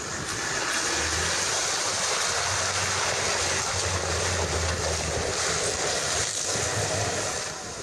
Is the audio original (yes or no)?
yes